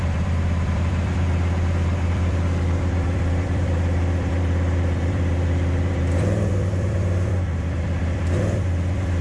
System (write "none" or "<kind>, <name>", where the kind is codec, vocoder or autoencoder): vocoder, BigVGAN v2